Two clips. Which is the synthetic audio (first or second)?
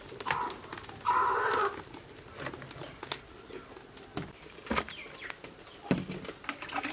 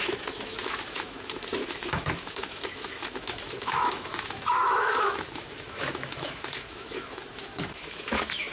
second